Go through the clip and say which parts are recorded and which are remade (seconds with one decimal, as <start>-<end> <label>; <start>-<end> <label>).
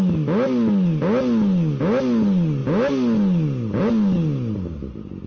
0.0-5.3 recorded